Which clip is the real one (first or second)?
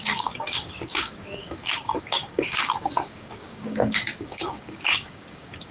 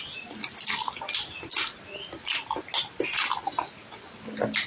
second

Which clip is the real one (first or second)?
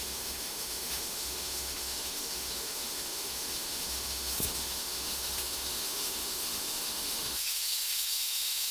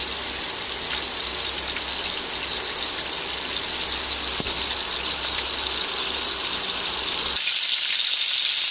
second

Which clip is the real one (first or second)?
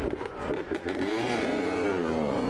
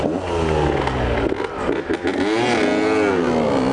second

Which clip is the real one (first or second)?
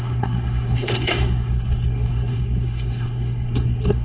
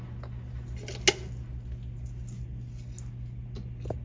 second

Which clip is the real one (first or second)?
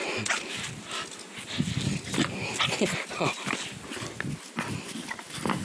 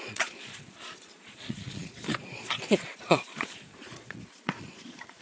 first